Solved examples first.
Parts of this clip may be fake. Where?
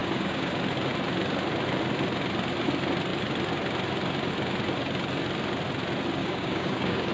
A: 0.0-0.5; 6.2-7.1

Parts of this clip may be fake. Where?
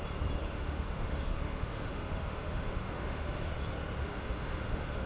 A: 0.4-3.5; 4.0-5.1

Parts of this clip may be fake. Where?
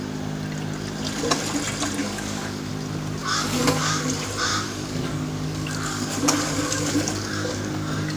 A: 2.0-2.7; 3.2-4.1; 4.5-8.2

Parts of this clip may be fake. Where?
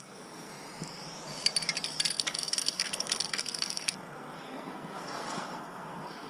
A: 0.0-0.5; 2.1-6.3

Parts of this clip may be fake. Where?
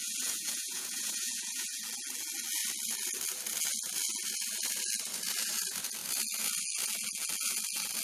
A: 0.0-1.8